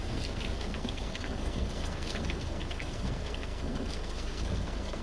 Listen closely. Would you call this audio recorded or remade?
remade